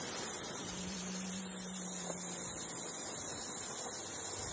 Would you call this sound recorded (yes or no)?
no